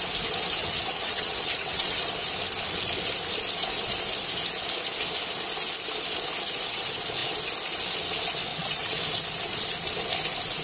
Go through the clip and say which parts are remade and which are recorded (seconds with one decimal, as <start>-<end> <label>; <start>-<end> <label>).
0.0-0.6 recorded; 0.6-2.1 remade; 2.1-8.5 recorded; 8.5-9.0 remade; 9.0-10.6 recorded